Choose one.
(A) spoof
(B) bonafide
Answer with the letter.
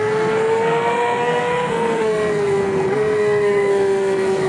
A